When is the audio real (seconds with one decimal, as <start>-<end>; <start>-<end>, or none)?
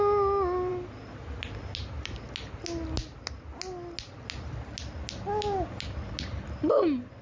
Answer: 0.0-7.2